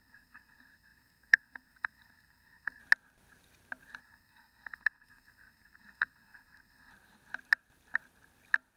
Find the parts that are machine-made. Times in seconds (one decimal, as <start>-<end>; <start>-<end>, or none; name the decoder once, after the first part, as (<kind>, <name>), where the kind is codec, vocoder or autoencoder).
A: 0.0-2.8 (codec, SNAC); 4.0-6.9

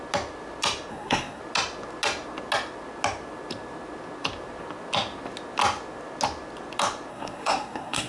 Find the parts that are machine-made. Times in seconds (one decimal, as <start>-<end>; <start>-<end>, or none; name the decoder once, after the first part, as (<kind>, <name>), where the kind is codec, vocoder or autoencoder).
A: 0.9-1.4 (codec, SNAC); 7.1-8.1

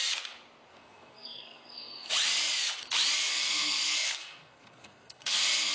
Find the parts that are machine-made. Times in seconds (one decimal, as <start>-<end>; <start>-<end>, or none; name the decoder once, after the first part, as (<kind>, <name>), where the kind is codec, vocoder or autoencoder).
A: 0.7-2.1 (codec, SNAC); 3.3-5.7

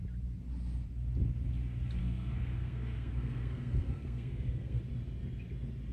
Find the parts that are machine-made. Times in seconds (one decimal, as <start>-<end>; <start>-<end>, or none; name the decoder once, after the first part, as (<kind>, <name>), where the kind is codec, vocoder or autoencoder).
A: 2.0-4.8 (codec, SNAC)

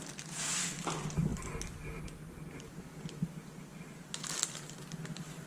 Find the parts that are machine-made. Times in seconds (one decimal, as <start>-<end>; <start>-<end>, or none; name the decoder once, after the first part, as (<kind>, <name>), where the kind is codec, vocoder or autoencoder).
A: none

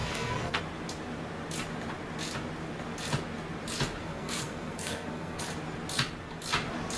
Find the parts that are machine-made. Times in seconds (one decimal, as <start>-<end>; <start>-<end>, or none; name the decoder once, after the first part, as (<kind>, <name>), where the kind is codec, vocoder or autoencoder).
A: 0.0-0.6 (codec, SNAC); 4.0-5.4

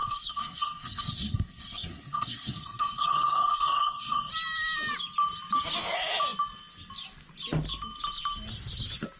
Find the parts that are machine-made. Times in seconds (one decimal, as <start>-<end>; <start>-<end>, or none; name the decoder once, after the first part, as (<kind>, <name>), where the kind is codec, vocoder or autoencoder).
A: 0.0-4.3 (codec, SNAC)